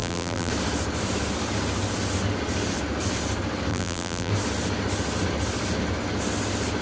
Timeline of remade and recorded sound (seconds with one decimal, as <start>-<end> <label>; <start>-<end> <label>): 0.0-0.5 remade; 0.5-3.7 recorded; 3.7-4.3 remade; 4.3-6.8 recorded